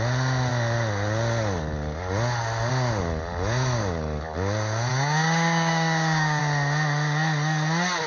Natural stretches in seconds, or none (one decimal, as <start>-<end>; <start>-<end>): 0.0-4.9; 6.4-8.1